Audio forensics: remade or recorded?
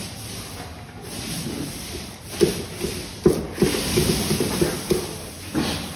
remade